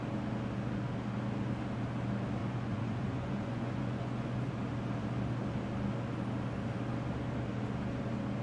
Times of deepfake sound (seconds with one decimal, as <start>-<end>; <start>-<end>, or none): 2.4-4.4